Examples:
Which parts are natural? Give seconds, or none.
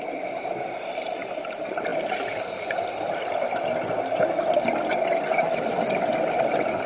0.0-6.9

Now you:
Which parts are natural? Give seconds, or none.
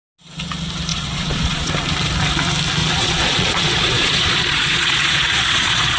0.0-0.9; 1.7-2.8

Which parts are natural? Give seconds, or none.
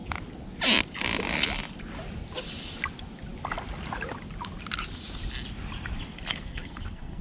0.0-6.3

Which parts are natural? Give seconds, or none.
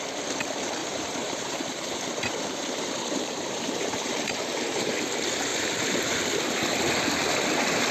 0.0-0.8; 4.9-5.5; 6.2-7.9